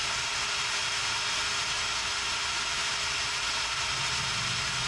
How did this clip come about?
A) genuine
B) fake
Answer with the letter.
A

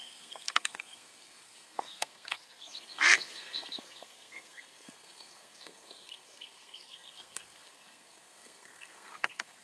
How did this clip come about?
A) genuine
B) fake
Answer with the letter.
B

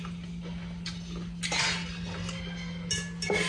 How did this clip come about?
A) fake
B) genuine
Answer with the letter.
B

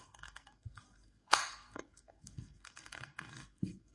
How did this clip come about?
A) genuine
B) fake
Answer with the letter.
B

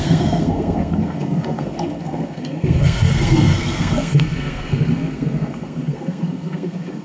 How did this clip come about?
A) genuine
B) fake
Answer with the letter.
B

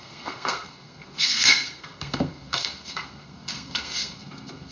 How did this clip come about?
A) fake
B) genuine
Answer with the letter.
A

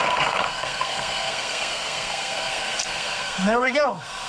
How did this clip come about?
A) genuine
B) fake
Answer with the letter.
B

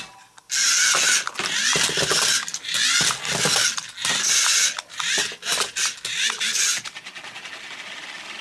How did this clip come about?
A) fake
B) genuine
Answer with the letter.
B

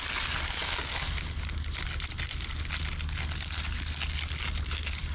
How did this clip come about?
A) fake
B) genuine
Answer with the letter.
B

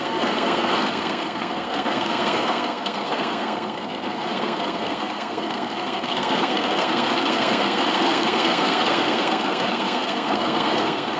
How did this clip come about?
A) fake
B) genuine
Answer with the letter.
A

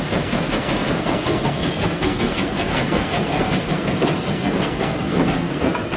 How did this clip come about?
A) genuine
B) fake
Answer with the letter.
B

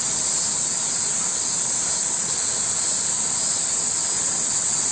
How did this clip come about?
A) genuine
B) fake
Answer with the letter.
A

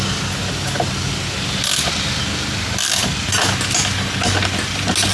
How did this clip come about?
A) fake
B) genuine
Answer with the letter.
B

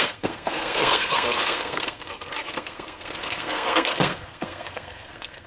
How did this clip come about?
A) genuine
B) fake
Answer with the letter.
B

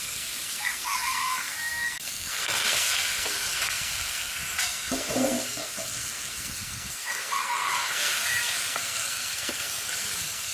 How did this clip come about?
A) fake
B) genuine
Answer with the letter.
A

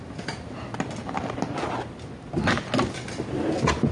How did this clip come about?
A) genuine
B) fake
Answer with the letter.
A